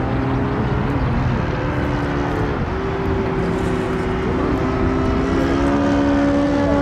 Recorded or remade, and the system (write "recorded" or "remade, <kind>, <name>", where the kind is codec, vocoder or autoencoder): recorded